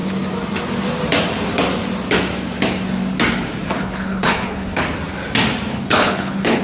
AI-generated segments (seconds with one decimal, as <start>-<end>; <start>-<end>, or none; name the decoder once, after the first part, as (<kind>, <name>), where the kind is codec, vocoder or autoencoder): 3.7-4.8 (codec, HILCodec); 5.7-6.6